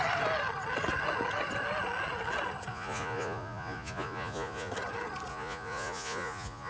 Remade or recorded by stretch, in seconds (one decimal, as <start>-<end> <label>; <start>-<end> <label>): 0.0-2.7 recorded; 2.7-4.7 remade; 4.7-5.3 recorded; 5.3-6.7 remade